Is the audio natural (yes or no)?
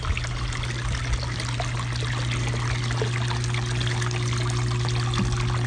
yes